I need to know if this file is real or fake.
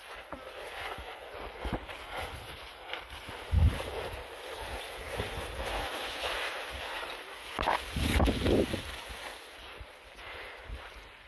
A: real